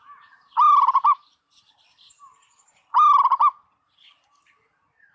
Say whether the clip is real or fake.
real